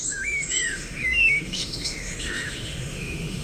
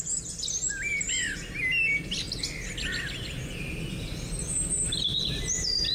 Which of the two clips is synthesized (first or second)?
first